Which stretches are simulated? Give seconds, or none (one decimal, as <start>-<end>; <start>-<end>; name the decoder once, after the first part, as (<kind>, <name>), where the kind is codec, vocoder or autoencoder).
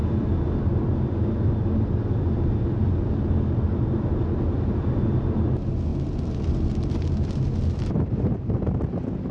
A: none